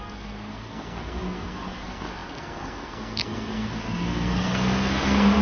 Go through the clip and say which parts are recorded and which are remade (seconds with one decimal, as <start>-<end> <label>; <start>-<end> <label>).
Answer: 0.0-5.4 remade